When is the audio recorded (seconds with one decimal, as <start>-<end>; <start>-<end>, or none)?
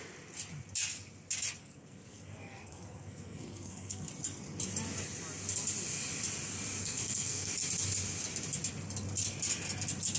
0.0-1.6; 4.1-6.8; 7.5-10.2